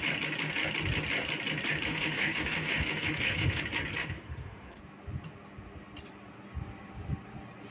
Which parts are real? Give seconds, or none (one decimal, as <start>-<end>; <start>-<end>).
0.0-1.9; 3.6-4.0; 4.8-7.7

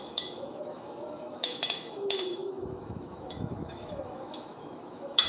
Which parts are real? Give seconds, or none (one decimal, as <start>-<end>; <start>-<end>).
none

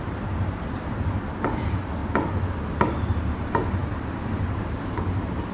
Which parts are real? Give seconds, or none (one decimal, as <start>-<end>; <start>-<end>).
2.0-3.2

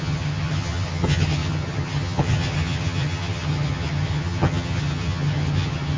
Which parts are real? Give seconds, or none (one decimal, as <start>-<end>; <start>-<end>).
none

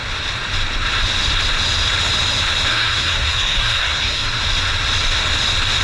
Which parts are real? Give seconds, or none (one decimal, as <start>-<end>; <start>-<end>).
0.0-2.7; 4.4-5.8